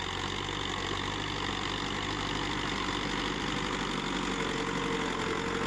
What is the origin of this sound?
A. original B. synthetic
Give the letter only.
A